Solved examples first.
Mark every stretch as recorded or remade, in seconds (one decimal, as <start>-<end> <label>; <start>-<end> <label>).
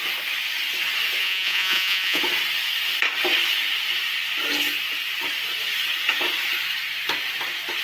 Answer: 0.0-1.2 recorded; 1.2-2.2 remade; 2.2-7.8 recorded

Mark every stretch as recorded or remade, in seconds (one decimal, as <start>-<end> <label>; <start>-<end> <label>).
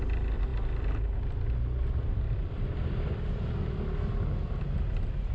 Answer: 0.0-5.3 recorded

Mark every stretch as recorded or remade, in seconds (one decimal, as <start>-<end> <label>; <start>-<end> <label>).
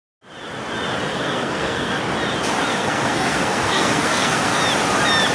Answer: 0.0-1.1 recorded; 1.1-2.0 remade; 2.0-2.7 recorded; 2.7-4.6 remade; 4.6-5.3 recorded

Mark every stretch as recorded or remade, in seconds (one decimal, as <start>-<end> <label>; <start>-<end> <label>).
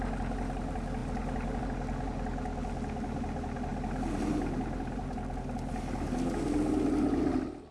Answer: 0.0-7.7 recorded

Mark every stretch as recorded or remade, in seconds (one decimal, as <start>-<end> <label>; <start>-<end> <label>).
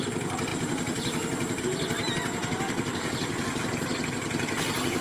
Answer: 0.0-5.0 recorded